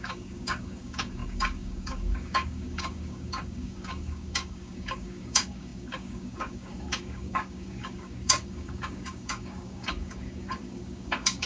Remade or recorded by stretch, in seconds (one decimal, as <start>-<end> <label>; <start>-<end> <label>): 0.0-11.5 remade